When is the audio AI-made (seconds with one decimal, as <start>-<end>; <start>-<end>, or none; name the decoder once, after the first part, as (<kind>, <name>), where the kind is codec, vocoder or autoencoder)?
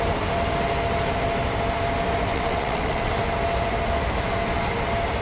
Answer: 2.3-3.1 (vocoder, WaveNeXt)